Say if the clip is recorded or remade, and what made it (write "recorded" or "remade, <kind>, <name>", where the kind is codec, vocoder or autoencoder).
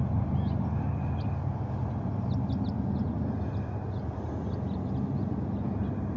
recorded